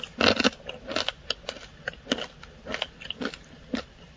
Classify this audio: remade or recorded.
recorded